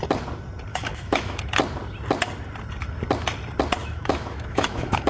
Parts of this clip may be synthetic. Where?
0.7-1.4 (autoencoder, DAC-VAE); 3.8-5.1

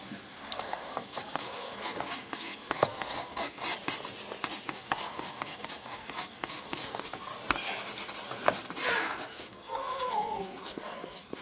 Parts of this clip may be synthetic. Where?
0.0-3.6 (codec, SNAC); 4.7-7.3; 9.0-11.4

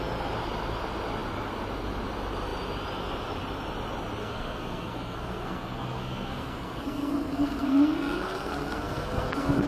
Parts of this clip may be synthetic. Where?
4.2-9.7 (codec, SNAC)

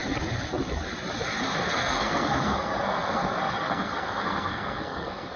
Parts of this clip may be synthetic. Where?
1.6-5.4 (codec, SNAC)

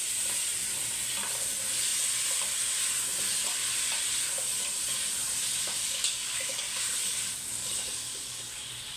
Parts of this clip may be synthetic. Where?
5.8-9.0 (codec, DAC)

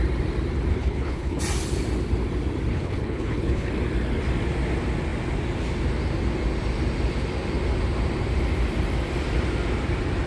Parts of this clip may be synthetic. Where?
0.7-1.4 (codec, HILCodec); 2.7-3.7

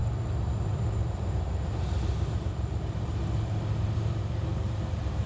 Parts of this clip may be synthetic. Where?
0.0-5.3 (vocoder, BigVGAN v2)